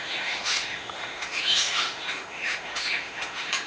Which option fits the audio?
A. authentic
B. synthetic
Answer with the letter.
B